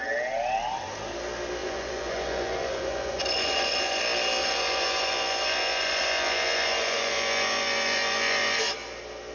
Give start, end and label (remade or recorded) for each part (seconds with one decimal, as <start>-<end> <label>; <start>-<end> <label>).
0.0-1.6 recorded; 1.6-4.0 remade; 4.0-4.4 recorded; 4.4-8.6 remade; 8.6-9.3 recorded